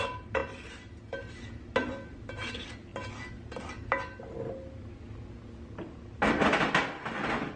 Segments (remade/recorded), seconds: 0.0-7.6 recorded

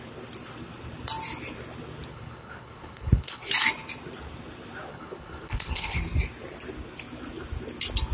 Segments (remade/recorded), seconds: 0.0-2.1 recorded; 2.1-3.5 remade; 3.5-4.9 recorded; 4.9-6.0 remade; 6.0-8.1 recorded

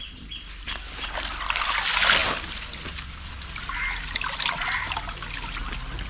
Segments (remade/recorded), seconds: 0.0-6.1 recorded

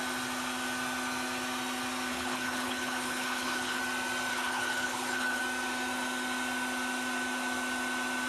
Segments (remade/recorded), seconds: 0.0-2.1 recorded; 2.1-3.8 remade; 3.8-4.3 recorded; 4.3-5.4 remade; 5.4-8.3 recorded

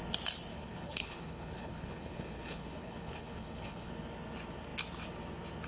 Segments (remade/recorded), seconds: 0.0-0.5 recorded; 0.5-3.9 remade; 3.9-5.7 recorded